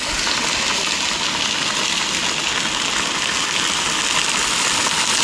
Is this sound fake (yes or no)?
no